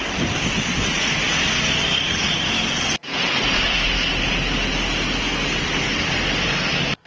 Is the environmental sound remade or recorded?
recorded